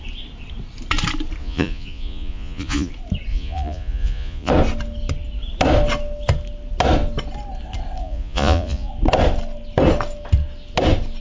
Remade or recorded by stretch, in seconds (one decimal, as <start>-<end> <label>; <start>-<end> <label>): 0.0-1.4 recorded; 1.4-2.9 remade; 2.9-3.3 recorded; 3.3-4.5 remade; 4.5-8.0 recorded; 8.0-8.9 remade; 8.9-11.2 recorded